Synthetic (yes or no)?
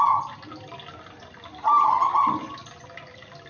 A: no